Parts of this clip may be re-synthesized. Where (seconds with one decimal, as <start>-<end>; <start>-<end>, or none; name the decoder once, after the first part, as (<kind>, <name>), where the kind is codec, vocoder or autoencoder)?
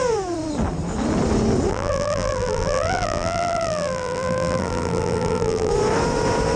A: 1.7-5.7 (vocoder, BigVGAN v2)